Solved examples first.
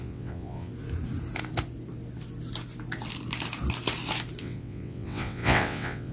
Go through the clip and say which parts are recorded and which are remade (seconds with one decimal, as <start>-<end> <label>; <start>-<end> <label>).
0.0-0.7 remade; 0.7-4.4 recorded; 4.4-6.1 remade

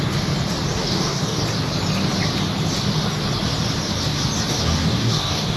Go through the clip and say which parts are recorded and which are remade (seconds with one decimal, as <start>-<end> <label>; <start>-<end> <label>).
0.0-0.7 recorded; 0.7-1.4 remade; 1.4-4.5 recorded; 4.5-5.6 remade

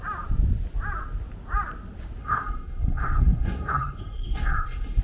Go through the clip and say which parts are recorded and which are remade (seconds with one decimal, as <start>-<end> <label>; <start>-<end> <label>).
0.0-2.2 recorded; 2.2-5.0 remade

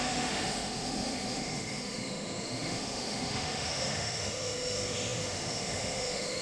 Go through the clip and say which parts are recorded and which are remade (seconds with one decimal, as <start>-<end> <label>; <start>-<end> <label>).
0.0-6.4 remade